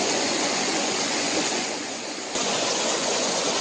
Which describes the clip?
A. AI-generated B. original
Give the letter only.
A